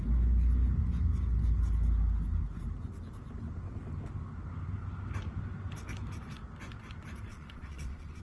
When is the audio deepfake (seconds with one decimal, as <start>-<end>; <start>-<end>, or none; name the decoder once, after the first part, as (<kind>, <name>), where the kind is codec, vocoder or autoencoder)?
7.3-8.2 (vocoder, Vocos)